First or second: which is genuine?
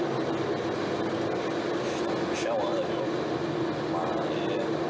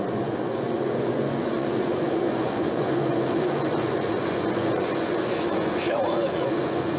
first